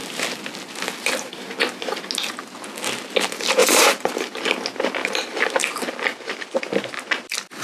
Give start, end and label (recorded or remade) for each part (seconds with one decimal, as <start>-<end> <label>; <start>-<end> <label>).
0.0-3.6 recorded; 3.6-4.4 remade; 4.4-5.0 recorded; 5.0-6.6 remade; 6.6-7.6 recorded